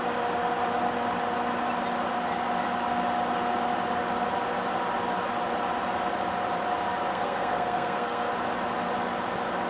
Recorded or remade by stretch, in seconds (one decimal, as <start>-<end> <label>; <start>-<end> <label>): 0.0-7.1 recorded; 7.1-8.3 remade; 8.3-9.7 recorded